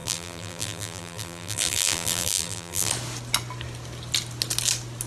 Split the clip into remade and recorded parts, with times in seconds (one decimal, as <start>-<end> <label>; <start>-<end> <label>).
0.0-2.9 remade; 2.9-5.1 recorded